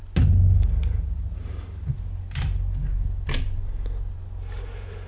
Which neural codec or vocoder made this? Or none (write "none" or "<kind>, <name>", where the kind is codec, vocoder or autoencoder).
none